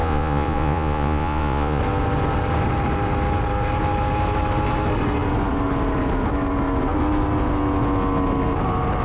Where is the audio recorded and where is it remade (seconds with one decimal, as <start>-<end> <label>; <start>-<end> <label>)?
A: 0.0-1.8 remade; 1.8-9.0 recorded